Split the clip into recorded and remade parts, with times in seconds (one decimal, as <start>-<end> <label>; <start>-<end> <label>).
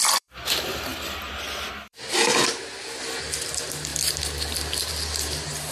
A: 0.0-0.9 remade; 0.9-1.7 recorded; 1.7-2.3 remade; 2.3-3.0 recorded; 3.0-3.9 remade; 3.9-4.9 recorded; 4.9-5.7 remade